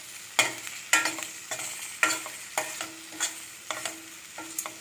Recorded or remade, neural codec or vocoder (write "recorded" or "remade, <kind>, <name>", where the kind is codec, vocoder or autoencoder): recorded